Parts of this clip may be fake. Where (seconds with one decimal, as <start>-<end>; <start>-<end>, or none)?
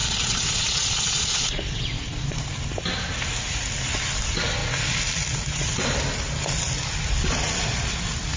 0.0-2.4